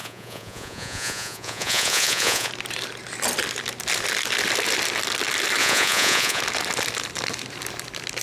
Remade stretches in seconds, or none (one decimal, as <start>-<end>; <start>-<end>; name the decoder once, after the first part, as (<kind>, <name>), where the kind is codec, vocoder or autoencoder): 0.0-2.5 (vocoder, Vocos); 5.6-6.4